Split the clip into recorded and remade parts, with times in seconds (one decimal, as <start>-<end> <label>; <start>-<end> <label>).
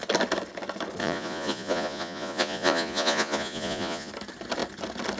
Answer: 0.0-1.0 recorded; 1.0-4.1 remade; 4.1-5.2 recorded